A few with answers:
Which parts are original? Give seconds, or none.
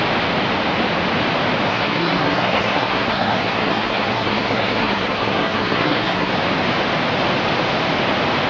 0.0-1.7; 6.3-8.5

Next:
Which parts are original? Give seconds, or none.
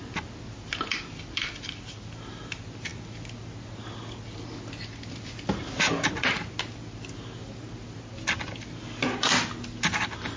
0.0-10.4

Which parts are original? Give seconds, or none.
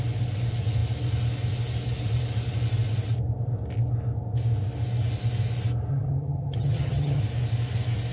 0.0-5.9; 7.2-8.1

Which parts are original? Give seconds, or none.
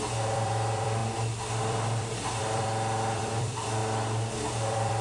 1.0-1.6; 3.8-4.3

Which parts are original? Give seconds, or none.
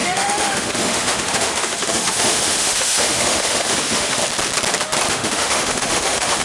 4.2-5.1